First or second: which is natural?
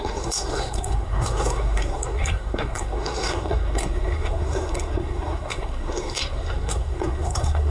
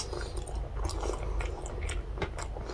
second